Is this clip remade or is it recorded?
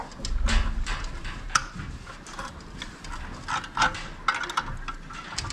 recorded